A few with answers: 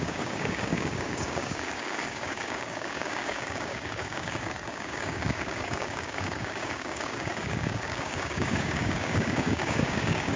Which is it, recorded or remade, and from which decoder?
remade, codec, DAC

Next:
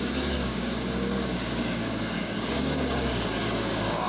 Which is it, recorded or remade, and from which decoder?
remade, codec, DAC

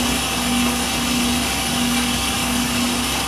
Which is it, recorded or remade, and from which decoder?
remade, codec, DAC